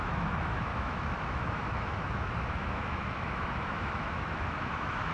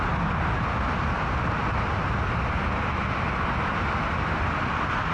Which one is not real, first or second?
first